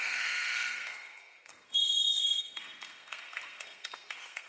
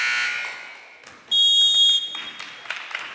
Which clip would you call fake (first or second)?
first